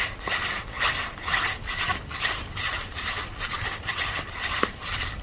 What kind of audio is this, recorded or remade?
remade